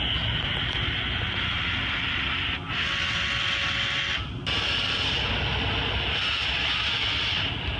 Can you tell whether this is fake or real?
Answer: real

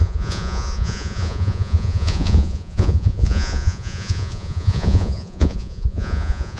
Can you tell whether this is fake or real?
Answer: fake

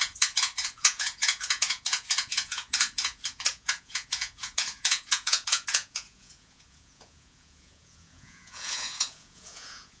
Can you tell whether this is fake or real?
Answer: fake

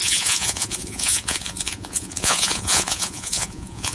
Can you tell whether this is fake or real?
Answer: fake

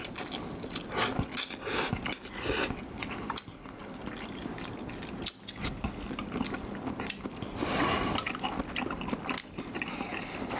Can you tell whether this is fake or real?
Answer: real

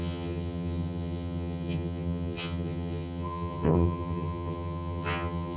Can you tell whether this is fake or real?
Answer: fake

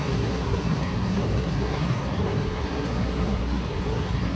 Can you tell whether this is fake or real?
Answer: fake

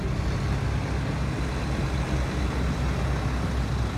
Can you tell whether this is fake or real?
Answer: real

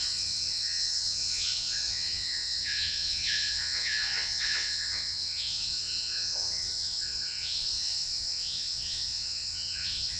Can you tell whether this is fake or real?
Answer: fake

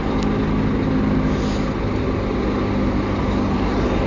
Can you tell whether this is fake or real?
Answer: real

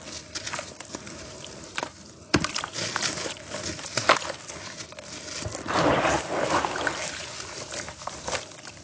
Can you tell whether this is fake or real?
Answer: real